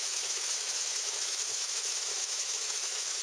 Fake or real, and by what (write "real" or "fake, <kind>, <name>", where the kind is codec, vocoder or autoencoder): fake, autoencoder, DAC-VAE